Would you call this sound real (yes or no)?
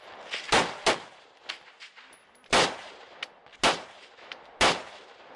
yes